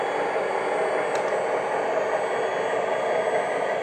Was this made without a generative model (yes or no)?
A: yes